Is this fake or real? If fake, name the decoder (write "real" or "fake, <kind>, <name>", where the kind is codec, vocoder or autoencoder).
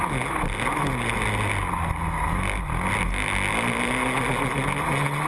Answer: real